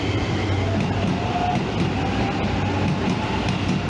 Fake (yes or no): no